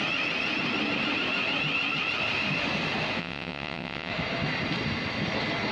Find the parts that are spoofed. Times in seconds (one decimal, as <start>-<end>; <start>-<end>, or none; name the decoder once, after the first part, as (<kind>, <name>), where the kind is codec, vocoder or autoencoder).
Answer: 3.2-4.1 (vocoder, WaveNeXt)